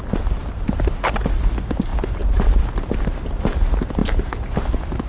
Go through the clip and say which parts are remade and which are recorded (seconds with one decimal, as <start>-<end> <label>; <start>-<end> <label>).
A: 0.0-5.1 recorded